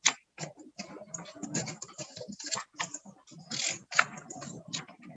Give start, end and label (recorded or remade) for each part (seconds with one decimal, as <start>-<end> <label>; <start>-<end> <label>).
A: 0.0-5.2 recorded